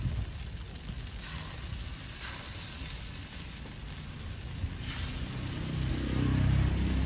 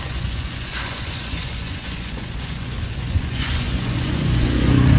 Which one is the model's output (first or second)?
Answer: second